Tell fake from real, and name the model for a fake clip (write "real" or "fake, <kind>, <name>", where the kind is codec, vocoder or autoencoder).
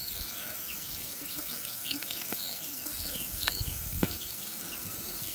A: fake, codec, SNAC